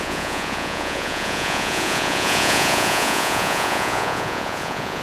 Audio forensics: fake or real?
fake